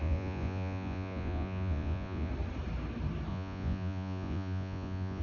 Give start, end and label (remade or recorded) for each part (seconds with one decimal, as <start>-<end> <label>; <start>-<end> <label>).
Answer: 0.0-2.3 remade; 2.3-3.3 recorded; 3.3-5.2 remade